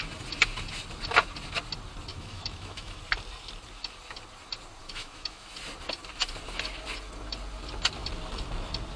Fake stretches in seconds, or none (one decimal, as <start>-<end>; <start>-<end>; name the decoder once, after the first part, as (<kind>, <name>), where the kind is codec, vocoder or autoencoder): 2.1-3.0 (autoencoder, DAC-VAE); 4.8-5.5